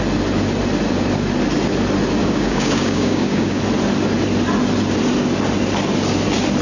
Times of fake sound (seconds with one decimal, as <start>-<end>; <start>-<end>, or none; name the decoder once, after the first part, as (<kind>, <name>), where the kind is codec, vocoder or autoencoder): 2.2-3.6 (codec, DAC)